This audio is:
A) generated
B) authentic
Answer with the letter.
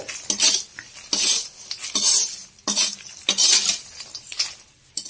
B